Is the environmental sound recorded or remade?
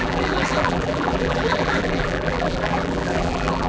remade